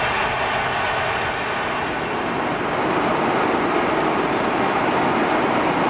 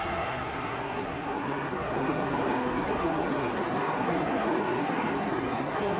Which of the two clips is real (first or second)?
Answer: first